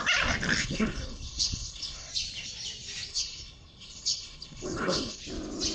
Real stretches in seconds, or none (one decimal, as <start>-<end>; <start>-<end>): 0.0-0.6; 2.1-3.1; 5.2-5.7